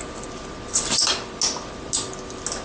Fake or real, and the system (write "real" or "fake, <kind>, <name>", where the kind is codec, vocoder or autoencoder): real